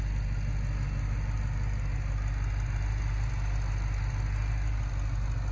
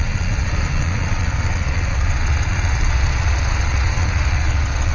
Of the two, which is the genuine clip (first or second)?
first